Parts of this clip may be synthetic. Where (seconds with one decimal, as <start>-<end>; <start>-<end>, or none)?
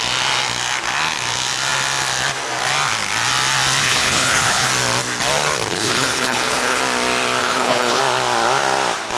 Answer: 3.8-4.7; 5.7-6.8; 7.4-8.0